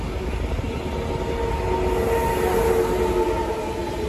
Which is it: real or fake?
real